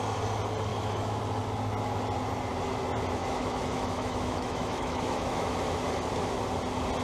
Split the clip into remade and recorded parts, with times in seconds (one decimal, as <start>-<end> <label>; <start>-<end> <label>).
0.0-0.7 recorded; 0.7-1.2 remade; 1.2-3.2 recorded; 3.2-5.6 remade; 5.6-7.0 recorded